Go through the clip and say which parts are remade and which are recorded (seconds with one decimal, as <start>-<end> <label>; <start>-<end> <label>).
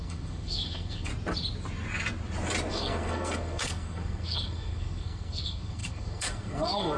0.0-1.1 remade; 1.1-2.7 recorded; 2.7-7.0 remade